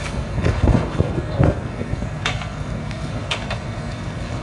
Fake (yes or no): yes